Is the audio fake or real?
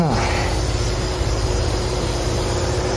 fake